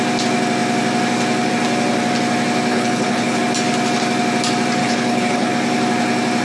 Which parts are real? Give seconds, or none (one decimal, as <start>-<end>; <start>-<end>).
0.0-2.7; 3.4-4.8; 5.5-6.4